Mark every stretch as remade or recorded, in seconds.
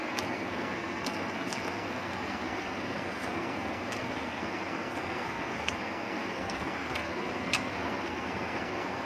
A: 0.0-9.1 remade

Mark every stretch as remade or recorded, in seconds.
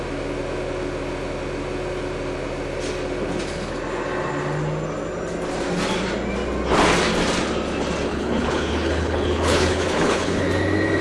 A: 0.0-8.1 recorded; 8.1-10.5 remade; 10.5-11.0 recorded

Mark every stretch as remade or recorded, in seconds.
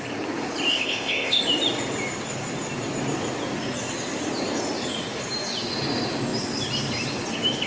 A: 0.0-0.7 recorded; 0.7-1.4 remade; 1.4-7.7 recorded